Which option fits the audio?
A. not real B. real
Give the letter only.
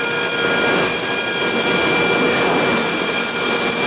B